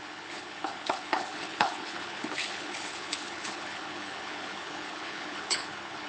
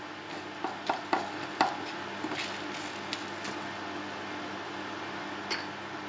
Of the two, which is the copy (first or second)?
first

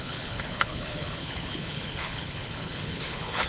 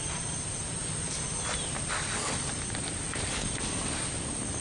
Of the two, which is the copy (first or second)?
first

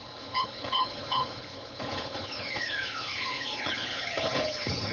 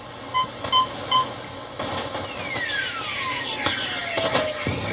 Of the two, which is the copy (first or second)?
first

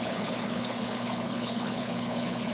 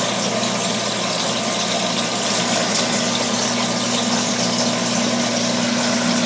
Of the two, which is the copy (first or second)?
first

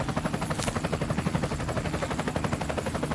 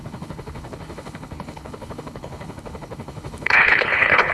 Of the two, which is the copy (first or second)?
second